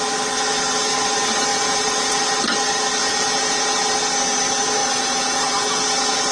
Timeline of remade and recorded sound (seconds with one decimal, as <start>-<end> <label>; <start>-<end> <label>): 0.0-1.5 recorded; 1.5-2.2 remade; 2.2-3.0 recorded; 3.0-3.9 remade; 3.9-4.8 recorded; 4.8-6.3 remade